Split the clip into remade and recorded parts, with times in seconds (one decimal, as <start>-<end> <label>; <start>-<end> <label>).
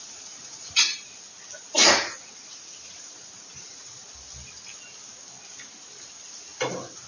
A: 0.0-0.8 remade; 0.8-1.8 recorded; 1.8-4.1 remade; 4.1-7.1 recorded